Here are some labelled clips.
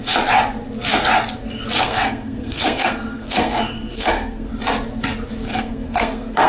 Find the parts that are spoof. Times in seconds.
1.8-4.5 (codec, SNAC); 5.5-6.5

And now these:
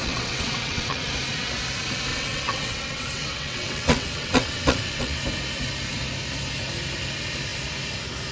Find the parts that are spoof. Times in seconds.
0.0-1.1 (vocoder, WaveNeXt); 2.1-5.2

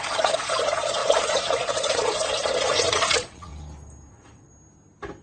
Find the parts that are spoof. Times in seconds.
0.0-3.5 (vocoder, Vocos); 4.1-4.5